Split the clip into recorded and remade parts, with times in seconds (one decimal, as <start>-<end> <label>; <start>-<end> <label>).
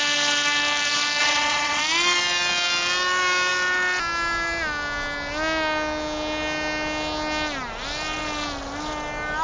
0.0-1.2 recorded; 1.2-1.8 remade; 1.8-9.4 recorded